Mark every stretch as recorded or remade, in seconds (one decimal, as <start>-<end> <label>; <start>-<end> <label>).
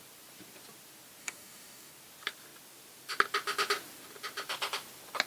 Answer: 0.0-1.2 recorded; 1.2-1.9 remade; 1.9-5.3 recorded